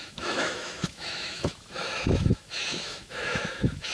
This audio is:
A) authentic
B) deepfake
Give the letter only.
B